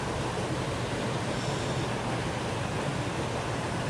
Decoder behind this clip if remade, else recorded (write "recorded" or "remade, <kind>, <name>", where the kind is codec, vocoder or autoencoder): recorded